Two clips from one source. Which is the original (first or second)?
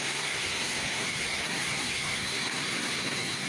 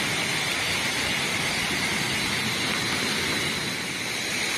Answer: second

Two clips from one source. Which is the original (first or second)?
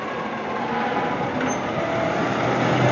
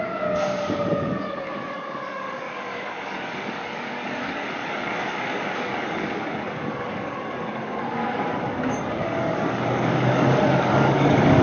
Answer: first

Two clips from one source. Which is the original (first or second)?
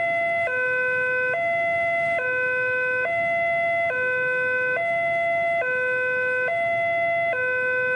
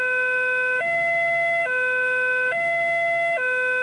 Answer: first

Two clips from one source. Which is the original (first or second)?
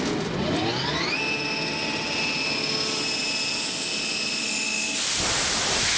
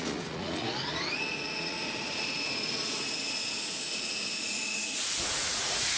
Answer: first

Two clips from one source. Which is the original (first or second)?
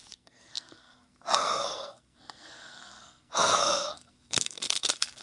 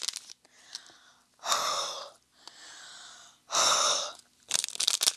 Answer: second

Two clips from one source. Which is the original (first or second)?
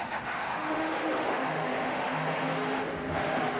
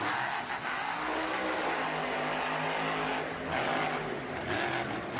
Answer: second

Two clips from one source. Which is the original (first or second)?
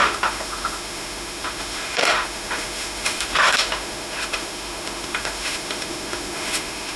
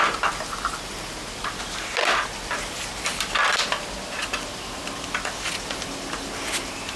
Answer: second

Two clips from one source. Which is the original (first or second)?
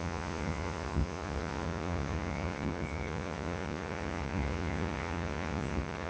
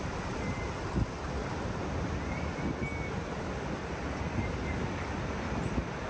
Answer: second